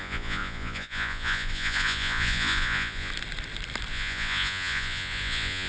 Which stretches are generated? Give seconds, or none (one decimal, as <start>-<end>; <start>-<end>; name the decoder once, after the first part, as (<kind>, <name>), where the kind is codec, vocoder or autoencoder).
0.0-3.1 (vocoder, Vocos); 3.9-5.7